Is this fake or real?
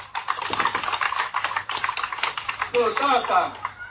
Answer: fake